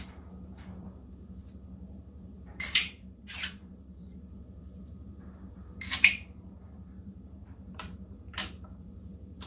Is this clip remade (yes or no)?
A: yes